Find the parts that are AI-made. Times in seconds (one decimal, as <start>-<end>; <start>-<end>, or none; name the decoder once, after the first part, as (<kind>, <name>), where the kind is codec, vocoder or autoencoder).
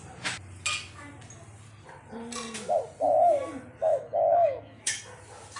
3.8-5.0 (autoencoder, DAC-VAE)